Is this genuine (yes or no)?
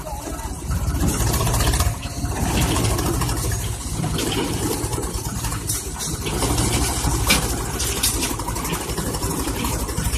no